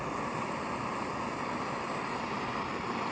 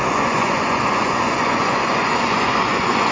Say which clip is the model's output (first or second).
second